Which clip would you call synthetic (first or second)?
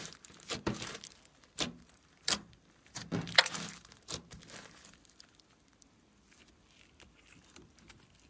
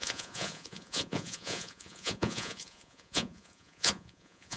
second